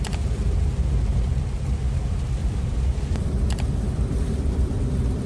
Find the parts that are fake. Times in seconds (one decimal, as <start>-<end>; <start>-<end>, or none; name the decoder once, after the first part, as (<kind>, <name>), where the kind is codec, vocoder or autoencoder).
1.3-2.0 (vocoder, BigVGAN v2); 2.4-5.3